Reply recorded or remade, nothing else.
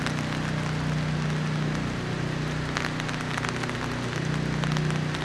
recorded